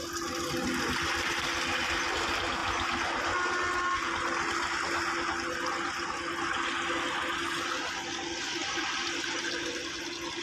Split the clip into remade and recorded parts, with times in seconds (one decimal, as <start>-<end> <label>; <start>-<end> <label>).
0.0-10.4 recorded